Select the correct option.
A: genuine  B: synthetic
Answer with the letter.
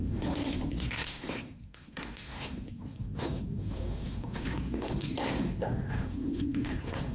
B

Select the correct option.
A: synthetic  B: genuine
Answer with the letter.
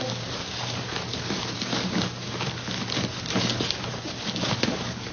A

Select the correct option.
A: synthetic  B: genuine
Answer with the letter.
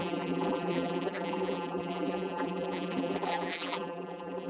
A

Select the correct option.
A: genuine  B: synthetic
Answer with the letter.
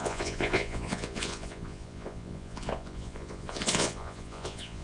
B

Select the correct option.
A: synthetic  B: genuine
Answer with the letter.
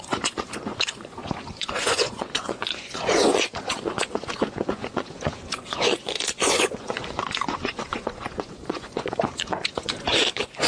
A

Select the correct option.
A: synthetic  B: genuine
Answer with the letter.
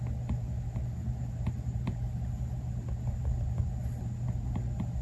B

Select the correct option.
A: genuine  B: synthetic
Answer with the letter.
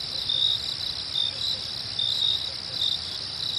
A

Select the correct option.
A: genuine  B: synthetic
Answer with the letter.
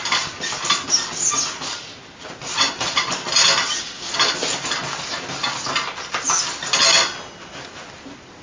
A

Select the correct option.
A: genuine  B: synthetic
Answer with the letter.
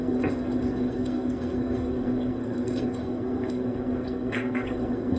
B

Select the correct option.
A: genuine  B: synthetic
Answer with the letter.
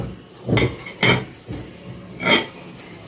A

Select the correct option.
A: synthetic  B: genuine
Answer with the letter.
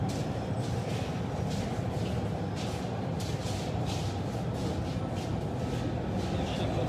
B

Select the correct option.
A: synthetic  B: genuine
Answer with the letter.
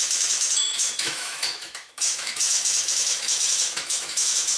A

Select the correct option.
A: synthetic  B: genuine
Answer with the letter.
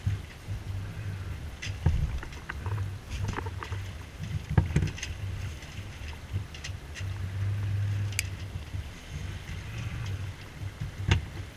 B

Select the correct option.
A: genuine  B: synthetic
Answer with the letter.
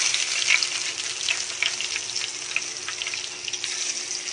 A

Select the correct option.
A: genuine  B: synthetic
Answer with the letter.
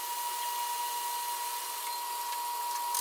A